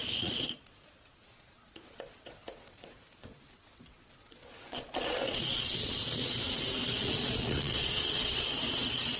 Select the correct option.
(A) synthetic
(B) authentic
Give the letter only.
A